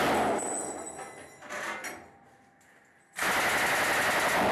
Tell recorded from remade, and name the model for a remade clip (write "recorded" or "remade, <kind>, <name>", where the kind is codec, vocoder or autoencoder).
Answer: recorded